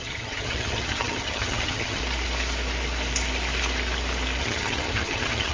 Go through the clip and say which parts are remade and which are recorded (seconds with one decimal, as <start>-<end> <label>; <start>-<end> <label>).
0.0-2.0 remade; 2.0-4.4 recorded; 4.4-5.5 remade